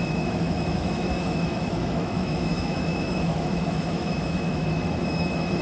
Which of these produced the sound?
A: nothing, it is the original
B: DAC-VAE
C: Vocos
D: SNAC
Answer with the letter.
B